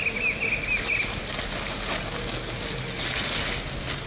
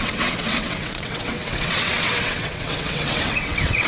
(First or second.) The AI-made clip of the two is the second